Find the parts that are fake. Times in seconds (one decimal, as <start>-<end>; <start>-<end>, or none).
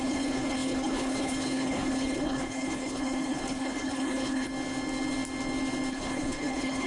0.0-4.5; 5.9-6.9